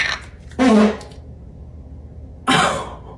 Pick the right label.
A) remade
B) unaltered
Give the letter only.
B